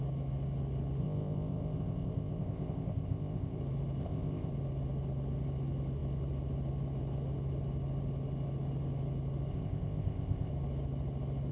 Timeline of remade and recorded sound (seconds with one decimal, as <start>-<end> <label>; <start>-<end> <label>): 0.0-1.0 recorded; 1.0-3.6 remade; 3.6-4.0 recorded; 4.0-4.5 remade; 4.5-9.5 recorded; 9.5-10.5 remade; 10.5-11.5 recorded